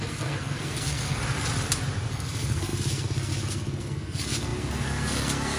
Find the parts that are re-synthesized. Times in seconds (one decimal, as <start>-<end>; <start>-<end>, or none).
0.0-1.2; 2.1-5.6